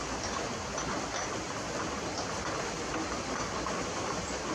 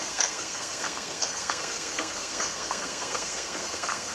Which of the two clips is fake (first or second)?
second